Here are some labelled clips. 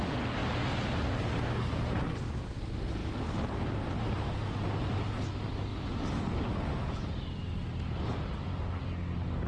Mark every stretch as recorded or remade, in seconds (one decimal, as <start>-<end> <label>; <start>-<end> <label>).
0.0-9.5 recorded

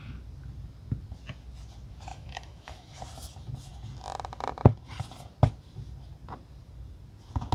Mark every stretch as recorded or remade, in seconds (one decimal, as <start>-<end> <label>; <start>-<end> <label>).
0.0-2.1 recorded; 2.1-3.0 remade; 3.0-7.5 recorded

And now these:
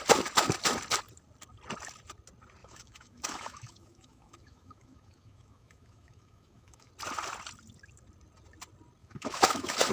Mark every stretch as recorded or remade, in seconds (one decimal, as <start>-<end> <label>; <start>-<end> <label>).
0.0-2.6 recorded; 2.6-6.9 remade; 6.9-9.0 recorded; 9.0-9.9 remade

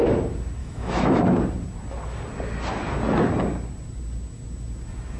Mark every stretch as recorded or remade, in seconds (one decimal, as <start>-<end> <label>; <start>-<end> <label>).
0.0-0.6 recorded; 0.6-1.2 remade; 1.2-5.2 recorded

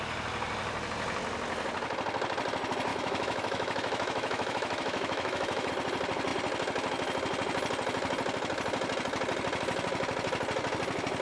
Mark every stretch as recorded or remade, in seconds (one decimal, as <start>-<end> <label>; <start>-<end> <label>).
0.0-2.9 recorded; 2.9-5.7 remade; 5.7-11.2 recorded